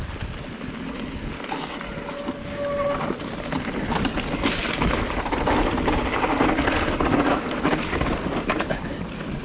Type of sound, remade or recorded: recorded